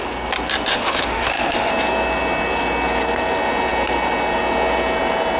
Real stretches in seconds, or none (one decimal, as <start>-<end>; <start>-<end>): 0.0-0.7; 1.7-5.4